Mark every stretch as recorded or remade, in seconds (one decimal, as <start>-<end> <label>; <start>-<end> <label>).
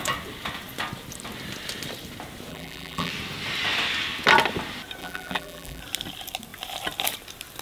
0.0-2.5 recorded; 2.5-3.1 remade; 3.1-5.0 recorded; 5.0-5.8 remade; 5.8-7.6 recorded